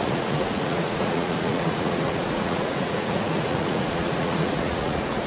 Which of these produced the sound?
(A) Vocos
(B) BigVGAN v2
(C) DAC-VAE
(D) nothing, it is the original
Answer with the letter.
A